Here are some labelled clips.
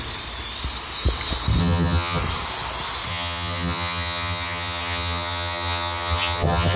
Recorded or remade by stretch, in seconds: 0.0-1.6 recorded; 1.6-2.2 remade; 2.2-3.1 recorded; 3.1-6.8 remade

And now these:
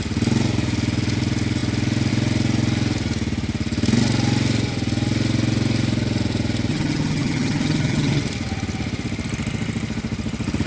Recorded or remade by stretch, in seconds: 0.0-6.7 recorded; 6.7-8.2 remade; 8.2-10.7 recorded

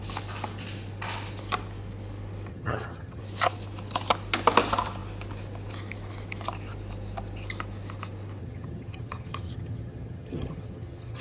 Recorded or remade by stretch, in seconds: 0.0-2.5 recorded; 2.5-3.2 remade; 3.2-8.4 recorded; 8.4-11.2 remade